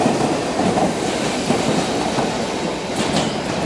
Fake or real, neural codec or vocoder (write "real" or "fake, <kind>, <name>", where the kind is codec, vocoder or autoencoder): real